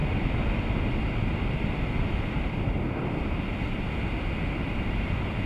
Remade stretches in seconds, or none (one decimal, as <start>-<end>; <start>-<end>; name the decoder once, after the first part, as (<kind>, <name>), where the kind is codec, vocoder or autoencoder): none